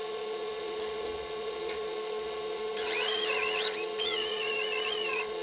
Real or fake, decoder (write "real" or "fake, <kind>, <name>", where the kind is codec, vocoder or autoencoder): fake, vocoder, Vocos